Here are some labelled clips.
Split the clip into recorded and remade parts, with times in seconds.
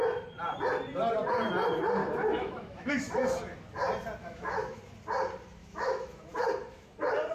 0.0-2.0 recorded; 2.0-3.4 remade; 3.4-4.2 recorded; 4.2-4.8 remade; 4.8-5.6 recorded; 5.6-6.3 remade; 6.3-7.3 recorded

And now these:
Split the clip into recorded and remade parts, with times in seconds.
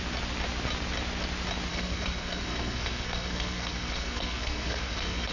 0.0-1.7 recorded; 1.7-5.3 remade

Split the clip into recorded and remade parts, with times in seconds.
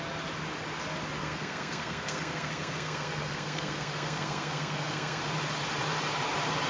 0.0-1.2 recorded; 1.2-5.2 remade; 5.2-6.7 recorded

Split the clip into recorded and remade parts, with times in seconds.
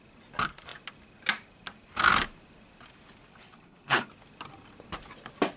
0.0-3.3 recorded; 3.3-4.1 remade; 4.1-5.6 recorded